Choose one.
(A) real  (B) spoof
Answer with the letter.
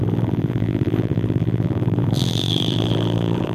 B